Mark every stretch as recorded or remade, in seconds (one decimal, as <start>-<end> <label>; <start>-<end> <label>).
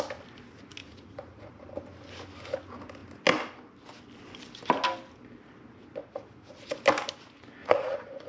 0.0-0.8 recorded; 0.8-1.6 remade; 1.6-6.0 recorded; 6.0-6.7 remade; 6.7-7.6 recorded; 7.6-8.3 remade